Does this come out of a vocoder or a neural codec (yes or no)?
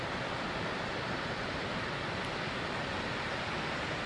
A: no